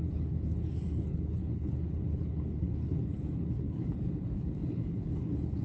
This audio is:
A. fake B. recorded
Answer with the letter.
A